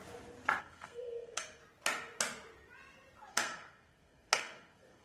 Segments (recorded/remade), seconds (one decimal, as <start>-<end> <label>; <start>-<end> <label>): 0.0-0.6 recorded; 0.6-1.6 remade; 1.6-3.3 recorded; 3.3-5.0 remade